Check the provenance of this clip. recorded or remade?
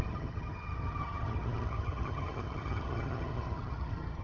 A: remade